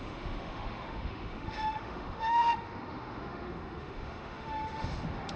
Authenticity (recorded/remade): remade